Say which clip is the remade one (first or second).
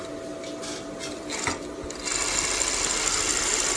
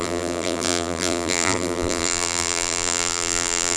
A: second